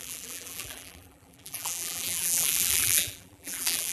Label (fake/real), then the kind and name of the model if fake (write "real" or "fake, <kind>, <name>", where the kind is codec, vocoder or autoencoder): fake, vocoder, BigVGAN v2